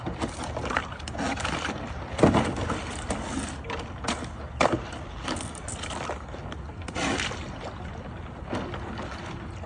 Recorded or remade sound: recorded